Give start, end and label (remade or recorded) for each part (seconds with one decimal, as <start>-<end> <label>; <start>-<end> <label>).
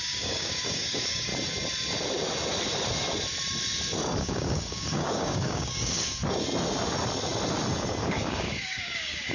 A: 0.0-1.3 remade; 1.3-4.2 recorded; 4.2-6.2 remade; 6.2-8.0 recorded; 8.0-9.3 remade